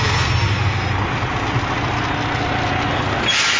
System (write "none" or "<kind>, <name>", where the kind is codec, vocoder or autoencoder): none